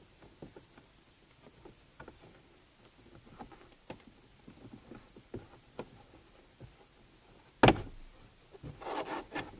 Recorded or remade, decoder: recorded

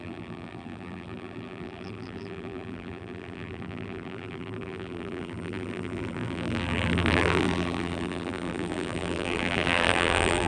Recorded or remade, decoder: remade, vocoder, BigVGAN v2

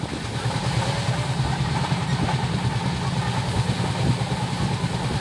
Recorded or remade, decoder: recorded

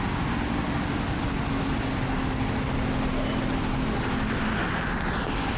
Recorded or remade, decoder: recorded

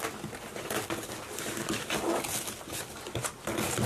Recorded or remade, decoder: recorded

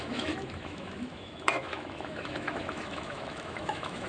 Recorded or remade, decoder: remade, autoencoder, DAC-VAE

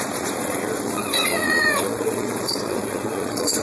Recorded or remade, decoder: remade, vocoder, Vocos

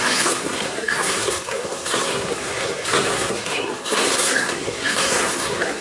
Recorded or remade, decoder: remade, codec, SNAC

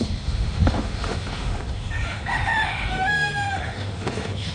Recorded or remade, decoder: remade, autoencoder, DAC-VAE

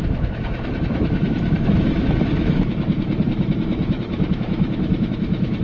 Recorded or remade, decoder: remade, autoencoder, DAC-VAE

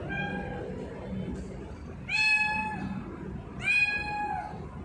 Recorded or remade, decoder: recorded